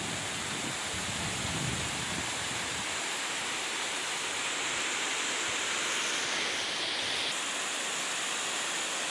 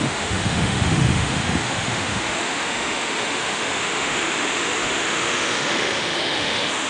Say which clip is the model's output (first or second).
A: second